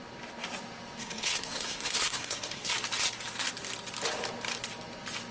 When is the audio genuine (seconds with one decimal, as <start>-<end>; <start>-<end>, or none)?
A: 0.0-1.0; 2.7-5.3

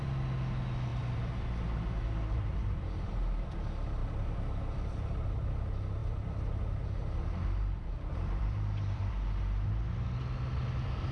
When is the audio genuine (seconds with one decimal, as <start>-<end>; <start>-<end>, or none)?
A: 0.0-0.9; 2.9-4.0; 5.2-6.0; 9.1-11.1

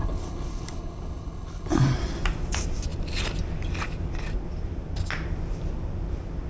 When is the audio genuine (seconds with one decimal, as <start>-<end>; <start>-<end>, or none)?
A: 1.7-6.5

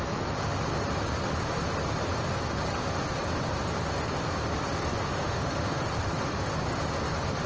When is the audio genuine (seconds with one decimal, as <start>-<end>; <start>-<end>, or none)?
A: 0.0-5.0; 5.8-7.5

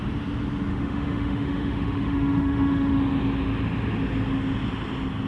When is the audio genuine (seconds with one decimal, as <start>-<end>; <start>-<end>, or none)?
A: 0.0-0.7; 3.0-5.3

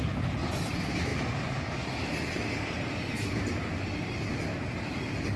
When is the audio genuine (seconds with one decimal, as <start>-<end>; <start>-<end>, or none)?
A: 0.0-5.4